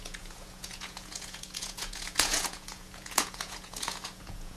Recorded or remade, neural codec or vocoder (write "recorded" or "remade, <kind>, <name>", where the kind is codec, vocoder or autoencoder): remade, vocoder, Vocos